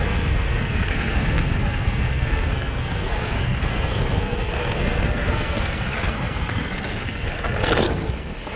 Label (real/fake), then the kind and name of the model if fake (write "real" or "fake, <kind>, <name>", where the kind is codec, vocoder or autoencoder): fake, codec, SNAC